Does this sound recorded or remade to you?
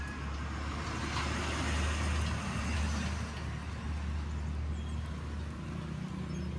recorded